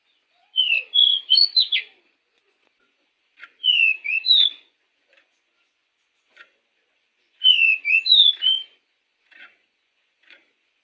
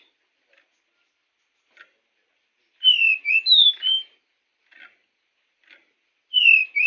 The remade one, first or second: first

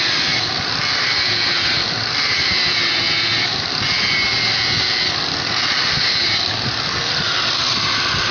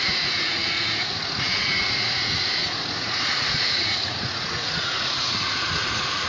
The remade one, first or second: second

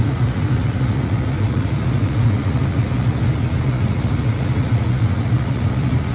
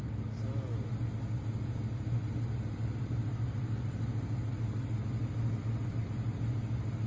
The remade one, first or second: first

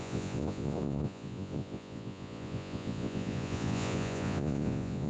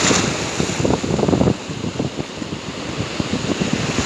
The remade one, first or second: first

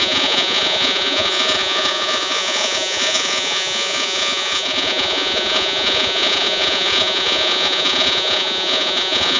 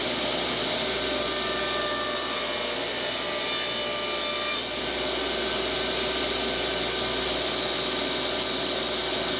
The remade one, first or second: first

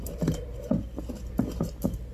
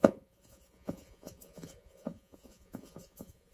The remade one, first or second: second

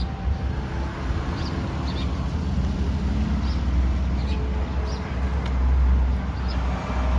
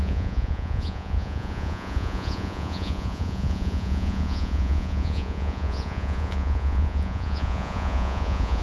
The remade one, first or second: second